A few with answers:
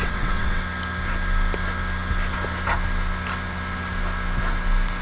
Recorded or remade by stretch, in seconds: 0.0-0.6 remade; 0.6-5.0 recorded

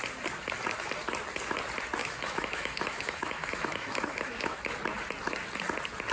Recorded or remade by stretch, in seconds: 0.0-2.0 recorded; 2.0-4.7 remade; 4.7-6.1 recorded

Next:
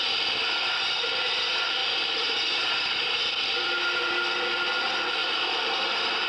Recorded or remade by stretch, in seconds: 0.0-1.8 recorded; 1.8-3.1 remade; 3.1-5.2 recorded; 5.2-6.3 remade

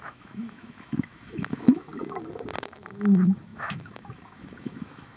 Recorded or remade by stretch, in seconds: 0.0-1.9 remade; 1.9-2.6 recorded; 2.6-5.2 remade

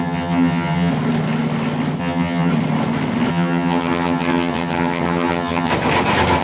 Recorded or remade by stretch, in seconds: 0.0-0.9 remade; 0.9-2.0 recorded; 2.0-2.5 remade; 2.5-3.3 recorded; 3.3-5.7 remade; 5.7-6.4 recorded